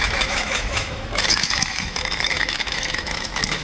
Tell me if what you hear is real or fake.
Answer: fake